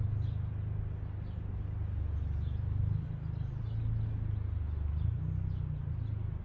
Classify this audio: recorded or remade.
recorded